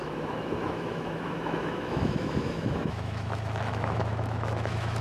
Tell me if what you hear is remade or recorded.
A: remade